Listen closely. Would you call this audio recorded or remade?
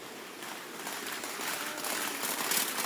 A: recorded